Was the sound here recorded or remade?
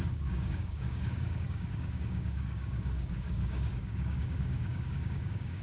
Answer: remade